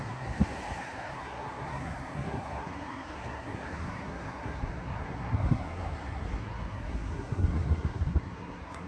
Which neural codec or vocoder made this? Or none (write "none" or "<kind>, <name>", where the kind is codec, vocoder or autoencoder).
codec, SNAC